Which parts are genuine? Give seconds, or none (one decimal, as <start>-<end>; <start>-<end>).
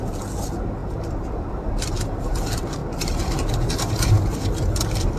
0.0-5.2